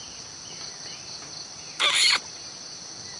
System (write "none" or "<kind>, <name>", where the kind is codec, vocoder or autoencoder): none